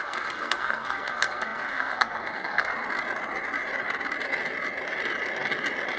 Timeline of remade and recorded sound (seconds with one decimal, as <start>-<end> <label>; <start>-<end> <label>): 0.0-2.7 remade; 2.7-6.0 recorded